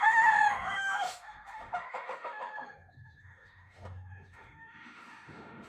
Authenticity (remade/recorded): remade